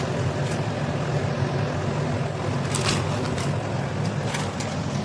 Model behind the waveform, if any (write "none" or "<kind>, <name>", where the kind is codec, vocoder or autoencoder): none